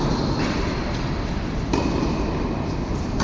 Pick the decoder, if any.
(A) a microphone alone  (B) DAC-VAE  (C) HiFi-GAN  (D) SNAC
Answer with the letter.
A